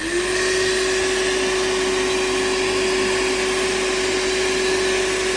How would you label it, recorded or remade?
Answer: recorded